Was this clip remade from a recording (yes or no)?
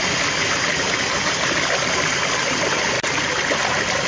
no